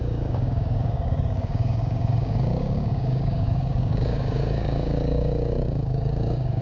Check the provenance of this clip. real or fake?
fake